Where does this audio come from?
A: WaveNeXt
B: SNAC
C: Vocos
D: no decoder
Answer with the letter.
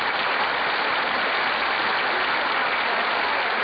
D